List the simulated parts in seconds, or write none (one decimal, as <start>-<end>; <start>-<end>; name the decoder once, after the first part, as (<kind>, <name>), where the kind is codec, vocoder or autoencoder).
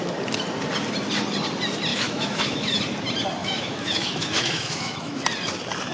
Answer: 1.9-2.8 (autoencoder, DAC-VAE); 3.4-5.2